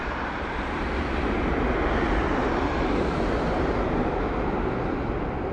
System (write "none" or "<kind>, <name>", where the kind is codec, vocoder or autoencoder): none